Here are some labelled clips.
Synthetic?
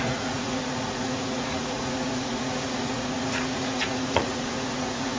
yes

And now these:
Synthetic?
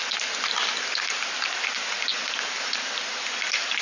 no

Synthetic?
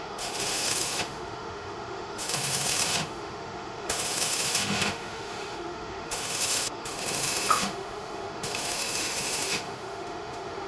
yes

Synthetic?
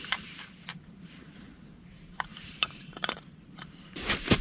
yes